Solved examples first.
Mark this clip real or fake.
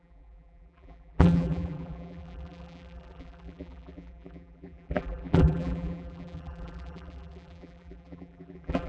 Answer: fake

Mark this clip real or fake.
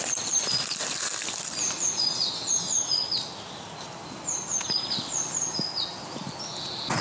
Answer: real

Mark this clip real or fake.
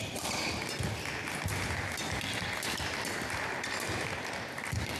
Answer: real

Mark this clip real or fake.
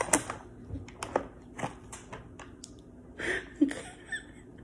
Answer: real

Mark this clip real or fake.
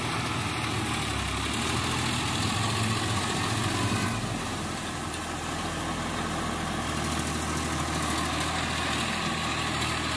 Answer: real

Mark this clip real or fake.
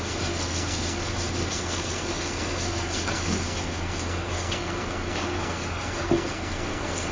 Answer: fake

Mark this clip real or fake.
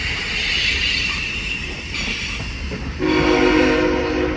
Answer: real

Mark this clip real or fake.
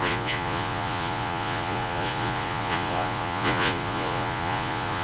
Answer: fake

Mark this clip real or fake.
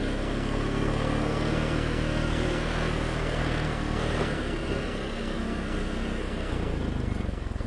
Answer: fake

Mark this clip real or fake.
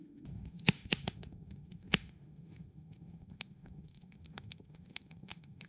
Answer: fake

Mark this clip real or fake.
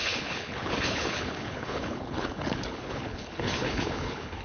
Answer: fake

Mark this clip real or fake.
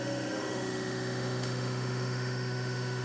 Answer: fake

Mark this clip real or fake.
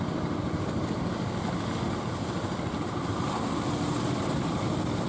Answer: real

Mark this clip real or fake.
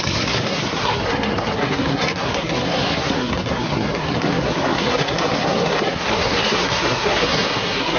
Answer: fake